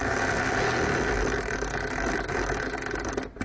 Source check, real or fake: real